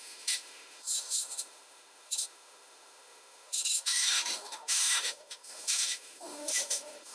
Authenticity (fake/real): fake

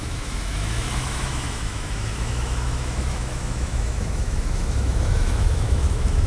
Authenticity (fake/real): fake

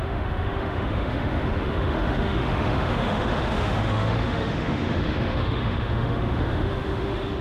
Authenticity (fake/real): fake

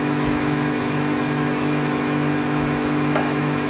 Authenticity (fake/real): fake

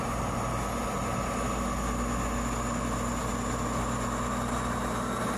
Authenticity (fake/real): real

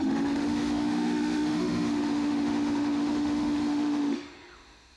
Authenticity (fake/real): fake